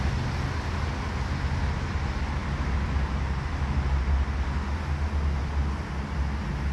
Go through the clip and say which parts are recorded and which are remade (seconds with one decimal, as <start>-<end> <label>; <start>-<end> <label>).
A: 0.0-6.7 recorded